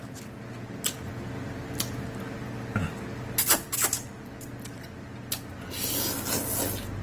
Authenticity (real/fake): real